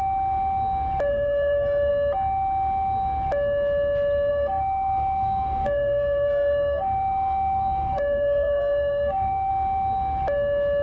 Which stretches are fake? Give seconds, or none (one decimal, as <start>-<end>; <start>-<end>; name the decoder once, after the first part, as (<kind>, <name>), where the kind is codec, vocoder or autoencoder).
1.1-1.9 (codec, SNAC); 4.3-9.5